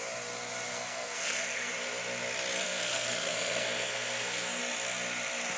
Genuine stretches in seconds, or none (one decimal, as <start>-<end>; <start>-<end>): 0.0-0.7; 1.7-2.6; 4.6-5.6